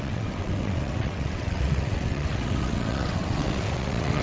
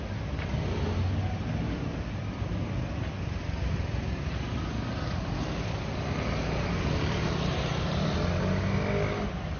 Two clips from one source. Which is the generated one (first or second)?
first